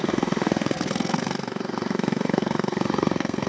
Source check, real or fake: fake